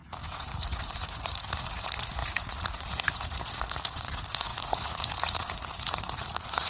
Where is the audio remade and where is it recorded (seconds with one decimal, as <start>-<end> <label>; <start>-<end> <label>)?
0.0-6.7 remade